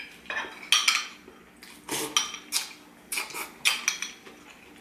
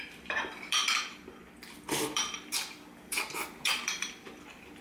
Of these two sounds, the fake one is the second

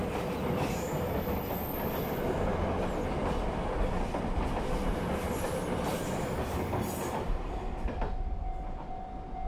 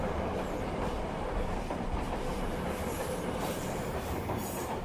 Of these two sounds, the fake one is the second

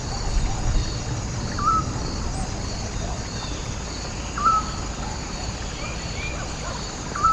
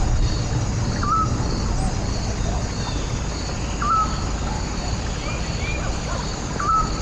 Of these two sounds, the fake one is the first